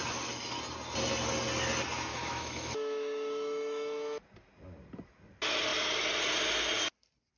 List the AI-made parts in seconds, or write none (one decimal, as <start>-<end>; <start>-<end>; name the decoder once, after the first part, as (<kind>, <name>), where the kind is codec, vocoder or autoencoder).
2.1-4.2 (autoencoder, DAC-VAE)